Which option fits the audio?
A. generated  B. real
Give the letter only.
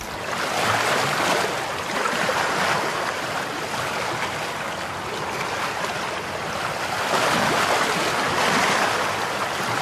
B